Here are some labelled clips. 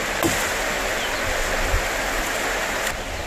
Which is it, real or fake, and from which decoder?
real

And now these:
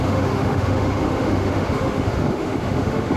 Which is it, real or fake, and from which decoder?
fake, autoencoder, DAC-VAE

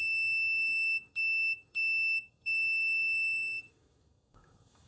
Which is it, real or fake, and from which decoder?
fake, autoencoder, DAC-VAE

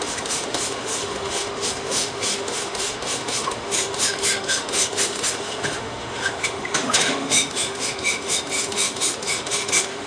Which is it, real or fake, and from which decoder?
fake, autoencoder, DAC-VAE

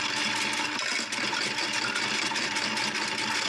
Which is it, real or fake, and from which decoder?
real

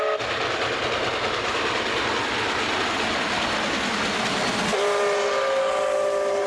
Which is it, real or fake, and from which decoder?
real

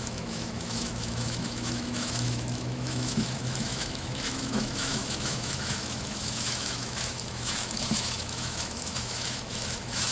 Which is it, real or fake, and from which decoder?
fake, autoencoder, DAC-VAE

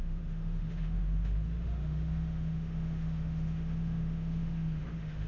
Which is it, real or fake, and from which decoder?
fake, autoencoder, DAC-VAE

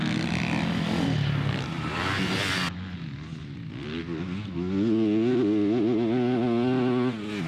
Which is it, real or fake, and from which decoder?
real